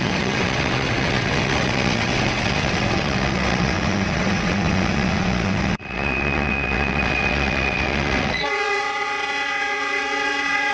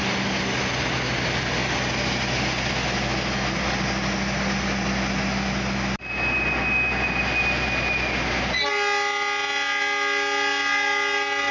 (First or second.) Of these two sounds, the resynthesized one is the first